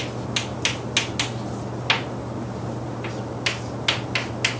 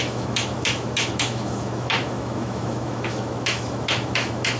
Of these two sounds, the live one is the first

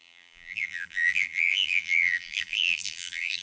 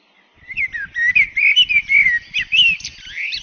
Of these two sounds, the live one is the second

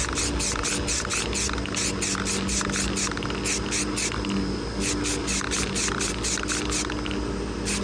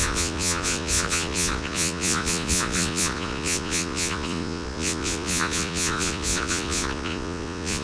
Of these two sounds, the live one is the first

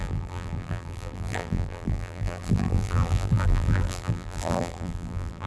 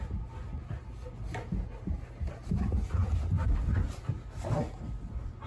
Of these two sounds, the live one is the second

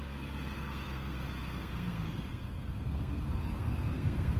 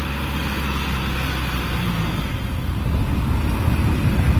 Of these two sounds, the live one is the second